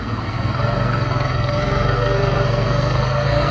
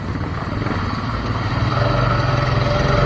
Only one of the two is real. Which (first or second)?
second